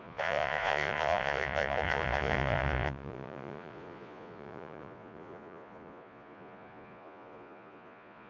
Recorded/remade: remade